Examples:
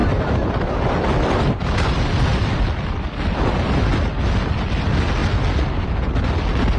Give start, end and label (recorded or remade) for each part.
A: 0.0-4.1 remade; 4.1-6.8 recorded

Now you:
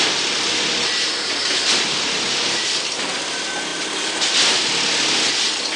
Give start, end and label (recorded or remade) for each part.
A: 0.0-5.8 recorded

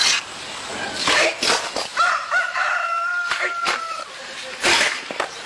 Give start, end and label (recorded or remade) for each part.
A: 0.0-1.9 recorded; 1.9-5.5 remade

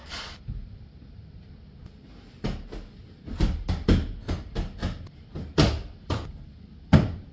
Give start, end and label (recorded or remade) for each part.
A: 0.0-7.3 recorded

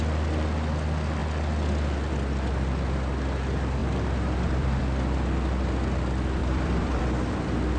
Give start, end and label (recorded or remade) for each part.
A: 0.0-3.8 recorded; 3.8-4.8 remade; 4.8-6.4 recorded; 6.4-7.0 remade; 7.0-7.8 recorded

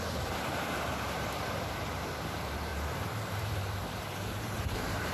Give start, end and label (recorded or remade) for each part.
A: 0.0-2.7 remade; 2.7-3.3 recorded; 3.3-5.1 remade

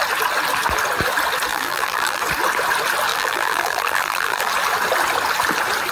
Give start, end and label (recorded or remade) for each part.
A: 0.0-1.5 recorded; 1.5-2.2 remade; 2.2-3.1 recorded; 3.1-4.5 remade; 4.5-5.9 recorded

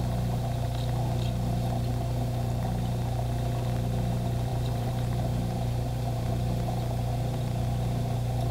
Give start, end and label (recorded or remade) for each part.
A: 0.0-4.5 recorded; 4.5-6.3 remade; 6.3-8.5 recorded